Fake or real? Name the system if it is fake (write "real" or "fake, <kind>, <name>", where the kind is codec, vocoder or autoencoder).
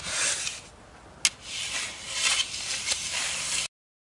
real